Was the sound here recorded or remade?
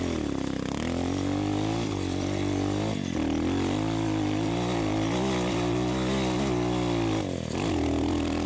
recorded